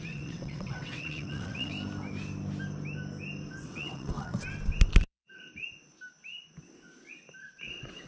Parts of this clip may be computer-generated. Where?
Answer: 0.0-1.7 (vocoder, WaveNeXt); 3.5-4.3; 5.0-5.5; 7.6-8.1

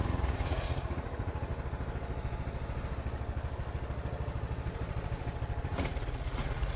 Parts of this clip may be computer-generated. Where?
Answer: 0.0-1.5 (vocoder, Vocos); 5.6-6.8

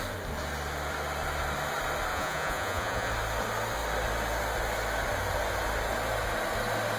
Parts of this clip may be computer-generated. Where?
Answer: 2.1-3.1 (vocoder, Vocos)

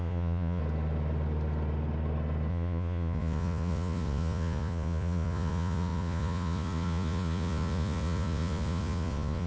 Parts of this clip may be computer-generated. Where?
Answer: 0.0-0.6 (vocoder, Vocos); 2.5-9.5

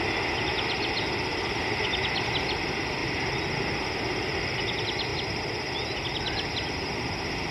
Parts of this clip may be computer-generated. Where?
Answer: 1.3-1.8 (vocoder, BigVGAN v2)

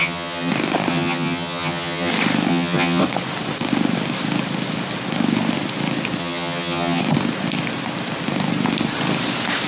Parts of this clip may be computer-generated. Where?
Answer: 0.0-0.5 (vocoder, HiFi-GAN); 0.9-2.1; 2.5-3.0; 6.2-7.0

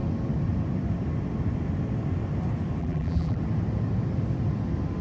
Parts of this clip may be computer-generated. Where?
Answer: 2.8-3.4 (vocoder, BigVGAN v2)

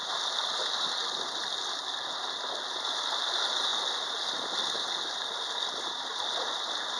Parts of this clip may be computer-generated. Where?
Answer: none